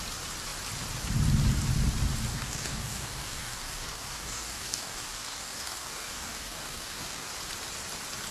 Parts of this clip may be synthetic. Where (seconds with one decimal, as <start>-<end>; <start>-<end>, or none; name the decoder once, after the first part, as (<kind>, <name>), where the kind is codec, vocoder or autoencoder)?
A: 2.3-7.3 (codec, DAC)